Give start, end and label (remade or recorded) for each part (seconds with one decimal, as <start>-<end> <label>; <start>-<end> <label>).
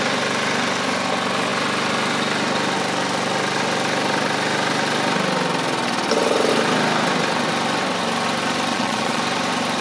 0.0-8.7 recorded; 8.7-9.2 remade; 9.2-9.8 recorded